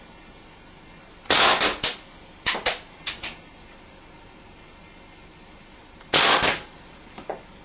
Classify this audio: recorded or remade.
recorded